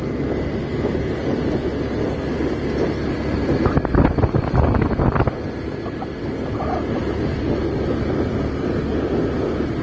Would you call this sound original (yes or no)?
yes